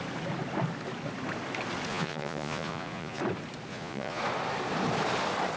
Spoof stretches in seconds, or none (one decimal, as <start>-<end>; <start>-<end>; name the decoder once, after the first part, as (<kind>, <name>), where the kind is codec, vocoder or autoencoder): 1.9-3.2 (vocoder, Vocos); 3.7-4.2